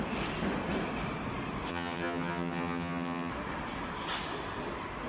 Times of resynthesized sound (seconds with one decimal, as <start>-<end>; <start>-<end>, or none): 1.7-3.3